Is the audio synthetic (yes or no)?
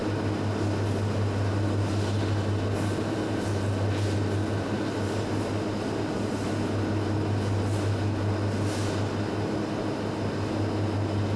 no